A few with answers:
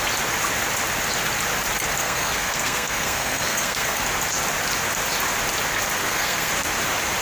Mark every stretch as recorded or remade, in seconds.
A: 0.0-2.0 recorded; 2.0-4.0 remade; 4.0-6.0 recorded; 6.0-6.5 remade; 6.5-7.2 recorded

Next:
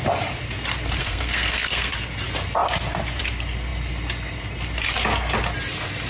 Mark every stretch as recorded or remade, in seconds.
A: 0.0-1.0 recorded; 1.0-1.9 remade; 1.9-6.1 recorded

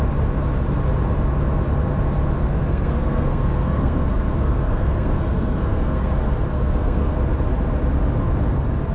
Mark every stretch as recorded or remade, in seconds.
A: 0.0-2.4 recorded; 2.4-6.1 remade; 6.1-6.5 recorded; 6.5-7.2 remade; 7.2-8.9 recorded

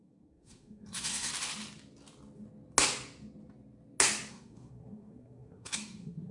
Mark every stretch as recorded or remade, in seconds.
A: 0.0-1.3 remade; 1.3-4.3 recorded; 4.3-6.3 remade

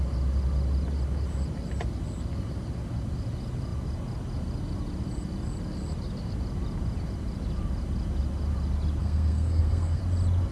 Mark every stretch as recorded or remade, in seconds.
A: 0.0-9.0 recorded; 9.0-10.0 remade; 10.0-10.5 recorded